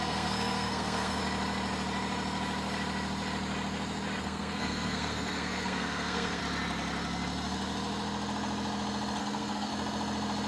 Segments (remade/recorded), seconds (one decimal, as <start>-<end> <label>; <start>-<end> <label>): 0.0-1.2 remade; 1.2-4.2 recorded; 4.2-6.4 remade; 6.4-9.2 recorded; 9.2-9.7 remade; 9.7-10.5 recorded